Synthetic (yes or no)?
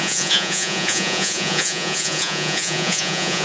yes